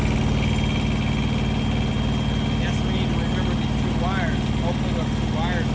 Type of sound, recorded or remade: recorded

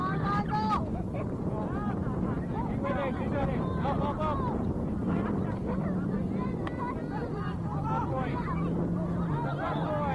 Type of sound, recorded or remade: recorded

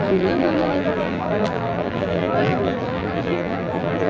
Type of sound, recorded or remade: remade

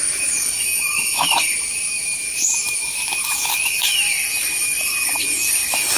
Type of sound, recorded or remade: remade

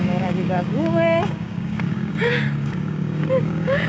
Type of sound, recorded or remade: remade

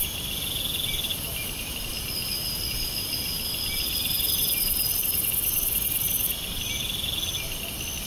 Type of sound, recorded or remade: recorded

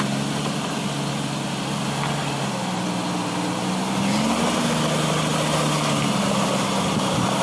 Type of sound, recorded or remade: recorded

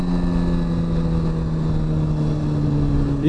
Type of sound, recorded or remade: recorded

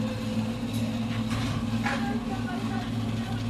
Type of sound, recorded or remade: recorded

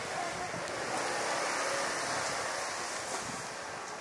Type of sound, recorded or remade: recorded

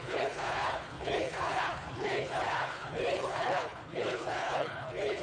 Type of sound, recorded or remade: remade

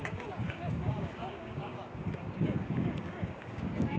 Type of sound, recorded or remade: remade